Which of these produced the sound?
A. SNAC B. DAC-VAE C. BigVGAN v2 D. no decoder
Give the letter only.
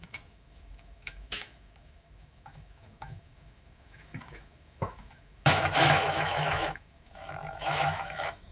B